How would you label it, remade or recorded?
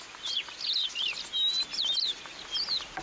recorded